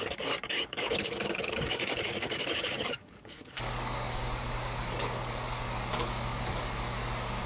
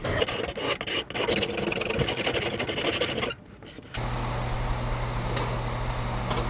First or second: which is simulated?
first